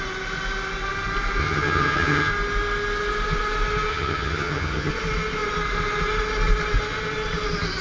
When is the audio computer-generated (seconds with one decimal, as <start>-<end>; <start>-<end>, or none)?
1.4-2.3; 3.9-4.9